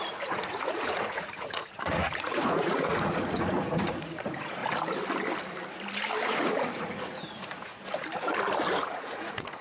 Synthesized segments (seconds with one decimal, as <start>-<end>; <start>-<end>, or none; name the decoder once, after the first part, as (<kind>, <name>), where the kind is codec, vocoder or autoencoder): 0.0-4.6 (vocoder, Vocos); 6.3-7.7; 8.7-9.6